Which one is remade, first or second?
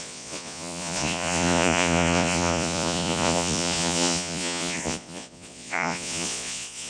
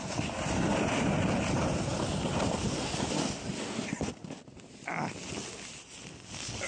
first